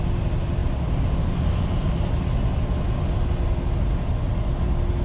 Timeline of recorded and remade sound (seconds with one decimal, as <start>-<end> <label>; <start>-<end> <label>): 0.0-5.0 recorded